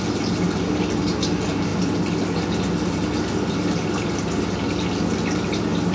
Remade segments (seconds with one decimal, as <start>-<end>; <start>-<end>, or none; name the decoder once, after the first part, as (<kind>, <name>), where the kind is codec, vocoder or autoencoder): none